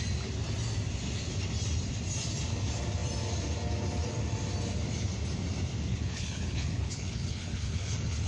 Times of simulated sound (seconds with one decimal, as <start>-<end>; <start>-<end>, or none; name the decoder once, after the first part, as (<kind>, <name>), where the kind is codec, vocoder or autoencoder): 5.9-8.3 (codec, HILCodec)